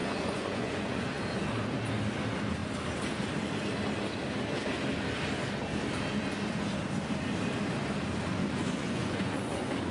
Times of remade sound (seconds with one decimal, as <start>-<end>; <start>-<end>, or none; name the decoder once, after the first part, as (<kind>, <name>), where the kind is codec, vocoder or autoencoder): 0.0-1.2 (vocoder, Vocos); 8.4-9.9